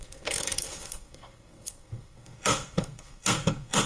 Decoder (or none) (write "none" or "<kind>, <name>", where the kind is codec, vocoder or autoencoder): codec, SNAC